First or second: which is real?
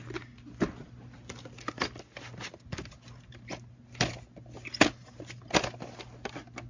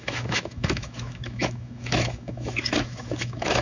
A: first